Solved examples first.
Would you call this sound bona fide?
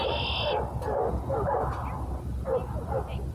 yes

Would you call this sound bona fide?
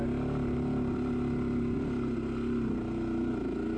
yes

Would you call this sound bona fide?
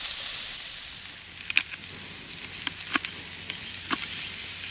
yes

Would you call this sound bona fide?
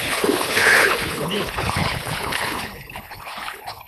no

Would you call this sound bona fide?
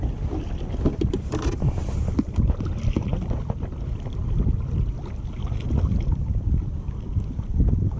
yes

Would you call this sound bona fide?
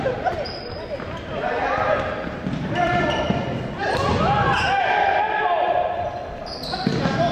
yes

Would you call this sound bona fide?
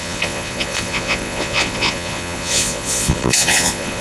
no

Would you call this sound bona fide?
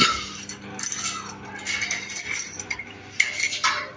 yes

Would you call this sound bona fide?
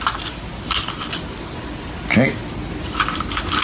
yes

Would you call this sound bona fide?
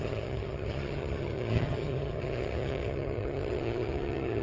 no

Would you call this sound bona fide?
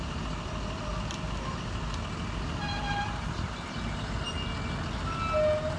yes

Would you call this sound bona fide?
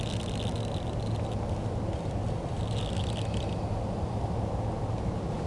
yes